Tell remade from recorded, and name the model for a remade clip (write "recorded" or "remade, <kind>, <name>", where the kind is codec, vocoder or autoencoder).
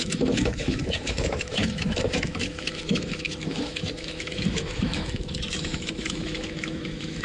remade, autoencoder, DAC-VAE